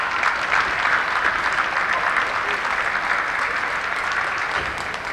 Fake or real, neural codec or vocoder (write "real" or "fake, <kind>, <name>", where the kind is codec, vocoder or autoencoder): real